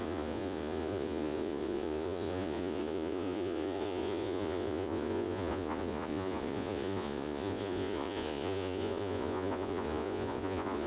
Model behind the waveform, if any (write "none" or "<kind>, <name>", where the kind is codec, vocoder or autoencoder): vocoder, Vocos